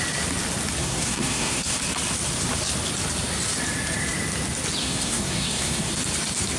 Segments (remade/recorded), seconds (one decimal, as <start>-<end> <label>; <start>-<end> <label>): 0.0-0.8 recorded; 0.8-1.8 remade; 1.8-4.8 recorded; 4.8-5.9 remade; 5.9-6.6 recorded